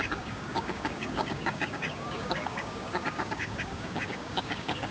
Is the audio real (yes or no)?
no